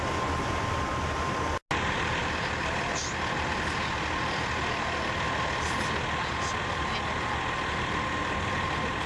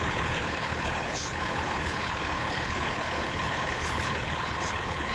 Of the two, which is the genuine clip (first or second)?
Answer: first